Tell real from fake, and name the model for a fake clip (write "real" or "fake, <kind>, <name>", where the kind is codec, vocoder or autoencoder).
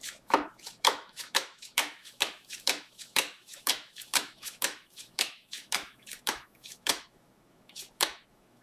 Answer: fake, autoencoder, DAC-VAE